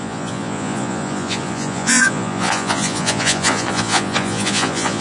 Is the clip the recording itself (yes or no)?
no